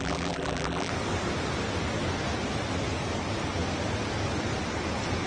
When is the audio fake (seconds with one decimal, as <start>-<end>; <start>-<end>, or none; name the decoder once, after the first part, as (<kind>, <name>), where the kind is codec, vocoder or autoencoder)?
0.0-0.9 (vocoder, BigVGAN v2)